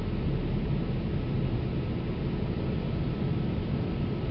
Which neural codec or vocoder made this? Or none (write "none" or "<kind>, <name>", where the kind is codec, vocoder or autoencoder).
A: none